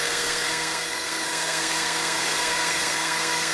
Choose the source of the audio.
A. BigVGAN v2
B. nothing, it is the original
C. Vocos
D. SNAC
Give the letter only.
D